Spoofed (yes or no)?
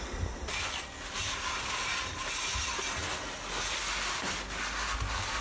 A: no